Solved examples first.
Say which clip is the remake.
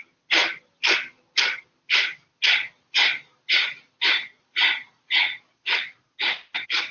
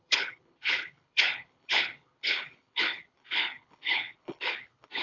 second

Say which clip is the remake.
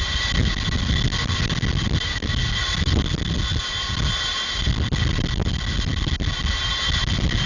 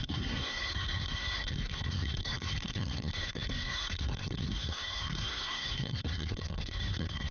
second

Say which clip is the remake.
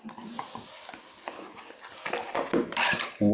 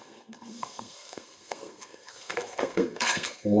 second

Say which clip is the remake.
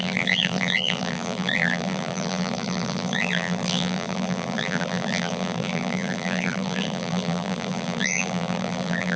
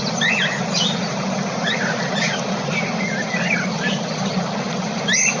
first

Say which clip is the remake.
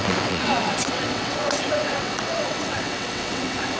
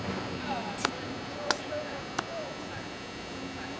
first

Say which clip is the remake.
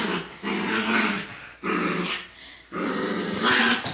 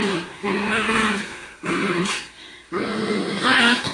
second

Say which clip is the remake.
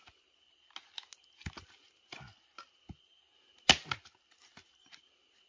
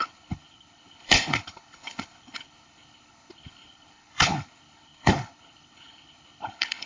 second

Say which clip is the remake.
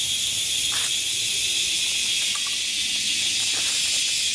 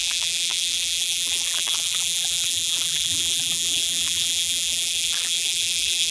second